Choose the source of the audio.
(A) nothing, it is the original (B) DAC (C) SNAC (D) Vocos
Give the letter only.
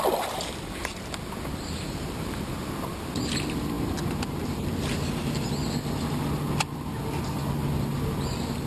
A